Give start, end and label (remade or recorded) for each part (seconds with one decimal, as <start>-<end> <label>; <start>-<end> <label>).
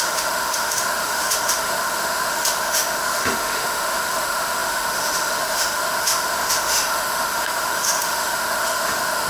0.0-9.3 remade